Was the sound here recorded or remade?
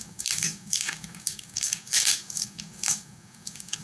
remade